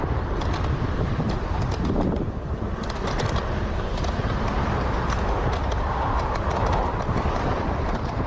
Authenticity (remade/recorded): remade